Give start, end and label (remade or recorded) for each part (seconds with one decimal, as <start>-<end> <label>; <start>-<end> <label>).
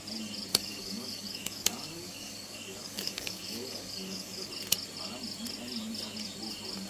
0.0-0.5 recorded; 0.5-4.5 remade; 4.5-6.9 recorded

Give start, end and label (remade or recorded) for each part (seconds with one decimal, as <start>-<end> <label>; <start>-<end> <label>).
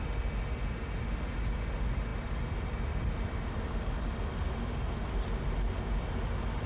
0.0-6.7 recorded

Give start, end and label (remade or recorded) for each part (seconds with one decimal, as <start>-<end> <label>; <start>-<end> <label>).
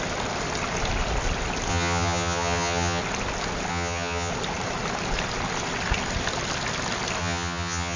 0.0-1.7 recorded; 1.7-3.0 remade; 3.0-3.7 recorded; 3.7-4.3 remade; 4.3-7.2 recorded; 7.2-8.0 remade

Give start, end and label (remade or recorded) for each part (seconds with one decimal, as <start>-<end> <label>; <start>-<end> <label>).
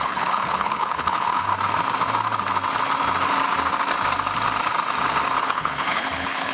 0.0-1.5 remade; 1.5-5.4 recorded; 5.4-6.5 remade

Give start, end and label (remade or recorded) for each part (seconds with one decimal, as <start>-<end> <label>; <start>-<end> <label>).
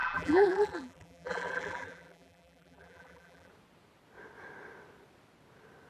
0.0-3.5 remade; 3.5-5.9 recorded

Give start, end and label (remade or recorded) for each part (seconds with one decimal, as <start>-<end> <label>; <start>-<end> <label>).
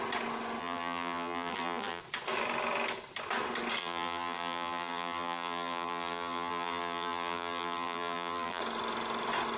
0.0-0.6 recorded; 0.6-2.0 remade; 2.0-3.8 recorded; 3.8-8.6 remade; 8.6-9.6 recorded